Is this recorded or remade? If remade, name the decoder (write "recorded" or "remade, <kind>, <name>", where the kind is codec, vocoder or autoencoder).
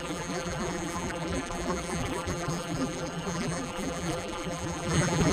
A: remade, vocoder, BigVGAN v2